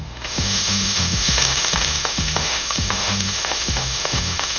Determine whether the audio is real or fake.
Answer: fake